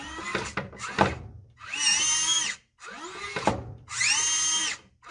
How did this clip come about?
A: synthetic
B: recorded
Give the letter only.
B